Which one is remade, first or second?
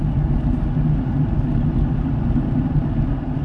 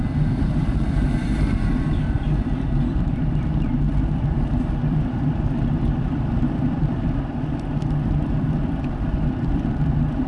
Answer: second